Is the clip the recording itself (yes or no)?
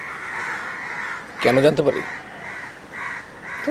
yes